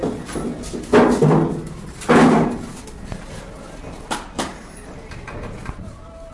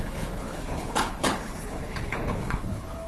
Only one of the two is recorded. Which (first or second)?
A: first